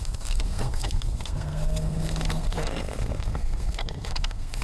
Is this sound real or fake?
fake